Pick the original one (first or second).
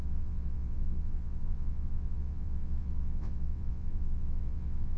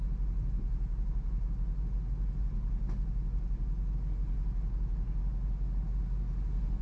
second